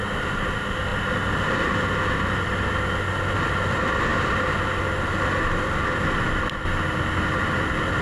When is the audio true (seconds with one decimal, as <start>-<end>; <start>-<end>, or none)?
0.0-8.0